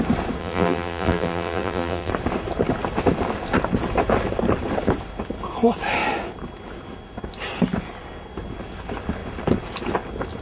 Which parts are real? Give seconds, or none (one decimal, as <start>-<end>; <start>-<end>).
0.0-0.4; 2.1-10.4